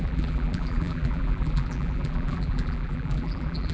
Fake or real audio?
fake